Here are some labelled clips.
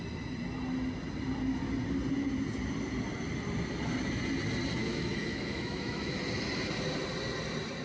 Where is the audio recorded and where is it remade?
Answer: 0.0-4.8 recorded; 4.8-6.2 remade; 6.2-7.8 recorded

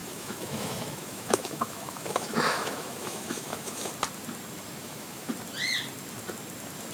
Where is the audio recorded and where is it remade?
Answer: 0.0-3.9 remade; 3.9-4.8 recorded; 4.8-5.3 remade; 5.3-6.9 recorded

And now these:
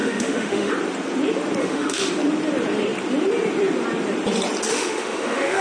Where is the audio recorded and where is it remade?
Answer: 0.0-0.7 remade; 0.7-1.6 recorded; 1.6-2.1 remade; 2.1-4.7 recorded; 4.7-5.6 remade

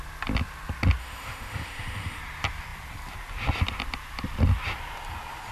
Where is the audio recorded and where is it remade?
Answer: 0.0-1.0 recorded; 1.0-2.2 remade; 2.2-5.5 recorded